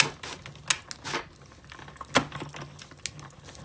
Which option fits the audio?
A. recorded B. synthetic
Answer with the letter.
A